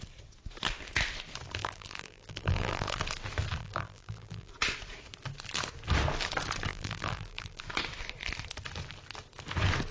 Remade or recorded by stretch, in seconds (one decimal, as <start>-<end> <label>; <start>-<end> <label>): 0.0-1.6 recorded; 1.6-3.0 remade; 3.0-3.6 recorded; 3.6-4.5 remade; 4.5-6.7 recorded; 6.7-7.6 remade; 7.6-9.9 recorded